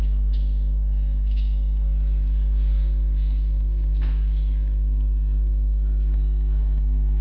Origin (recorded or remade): remade